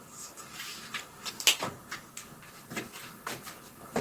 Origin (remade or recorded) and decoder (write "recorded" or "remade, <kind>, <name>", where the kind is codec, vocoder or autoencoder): recorded